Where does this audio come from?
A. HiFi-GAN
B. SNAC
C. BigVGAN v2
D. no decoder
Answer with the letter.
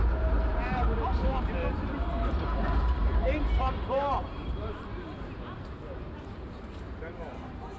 C